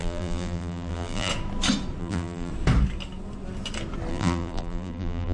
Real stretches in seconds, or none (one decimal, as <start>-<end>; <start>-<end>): 1.3-2.0; 2.5-4.1